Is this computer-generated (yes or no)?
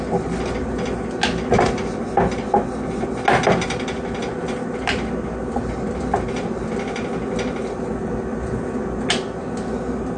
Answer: no